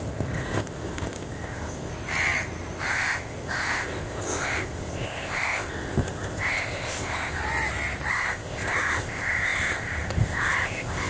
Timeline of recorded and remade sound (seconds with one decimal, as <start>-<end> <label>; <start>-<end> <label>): 0.0-1.9 remade; 1.9-2.9 recorded; 2.9-7.4 remade; 7.4-8.1 recorded; 8.1-11.1 remade